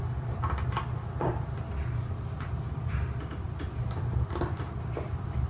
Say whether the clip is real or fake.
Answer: real